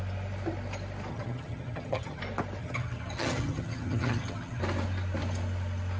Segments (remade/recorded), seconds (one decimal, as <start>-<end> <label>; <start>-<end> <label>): 0.0-1.1 recorded; 1.1-2.2 remade; 2.2-2.6 recorded; 2.6-4.6 remade; 4.6-6.0 recorded